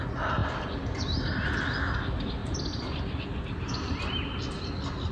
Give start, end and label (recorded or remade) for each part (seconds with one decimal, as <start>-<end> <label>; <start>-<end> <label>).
0.0-0.4 recorded; 0.4-1.6 remade; 1.6-2.4 recorded; 2.4-3.4 remade; 3.4-5.1 recorded